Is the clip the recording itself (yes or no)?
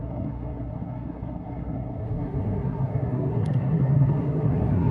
no